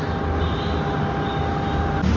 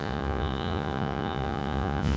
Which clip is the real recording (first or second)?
first